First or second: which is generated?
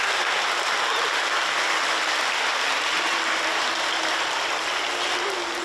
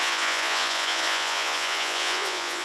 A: second